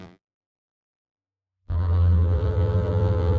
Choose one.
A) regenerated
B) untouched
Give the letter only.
A